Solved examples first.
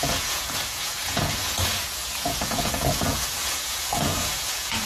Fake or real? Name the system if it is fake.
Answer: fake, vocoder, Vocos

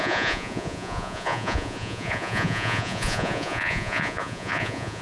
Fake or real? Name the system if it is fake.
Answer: fake, vocoder, Vocos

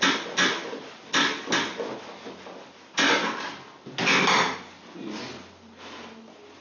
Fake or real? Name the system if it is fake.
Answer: real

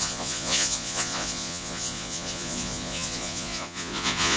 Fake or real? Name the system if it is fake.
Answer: fake, vocoder, Vocos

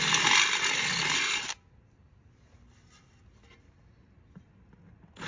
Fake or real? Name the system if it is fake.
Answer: real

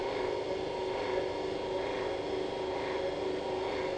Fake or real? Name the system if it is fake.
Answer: real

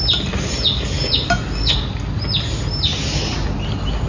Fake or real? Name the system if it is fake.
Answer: real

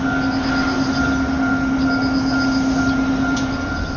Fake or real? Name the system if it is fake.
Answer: real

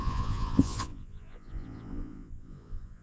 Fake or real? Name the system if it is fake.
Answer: fake, vocoder, Vocos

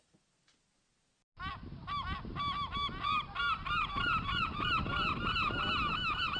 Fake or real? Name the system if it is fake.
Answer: real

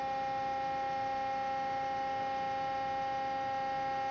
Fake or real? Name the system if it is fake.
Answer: real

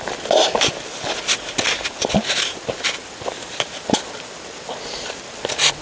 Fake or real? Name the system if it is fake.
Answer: real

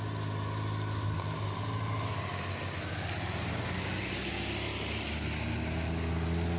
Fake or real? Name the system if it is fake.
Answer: real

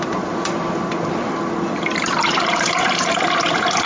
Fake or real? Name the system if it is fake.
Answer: real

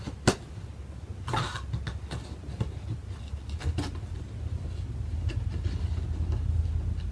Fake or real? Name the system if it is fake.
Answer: real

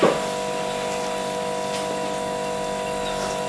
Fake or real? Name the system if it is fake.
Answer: real